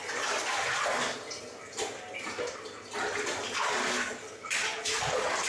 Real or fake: real